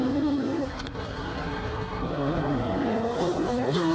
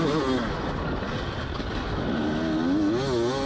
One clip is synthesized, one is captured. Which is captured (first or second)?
second